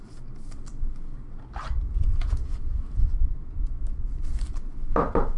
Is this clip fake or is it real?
real